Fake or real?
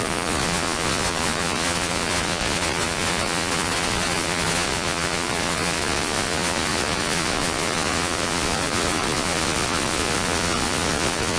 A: fake